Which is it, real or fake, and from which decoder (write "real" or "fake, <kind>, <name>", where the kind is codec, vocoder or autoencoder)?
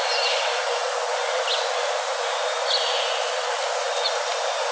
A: real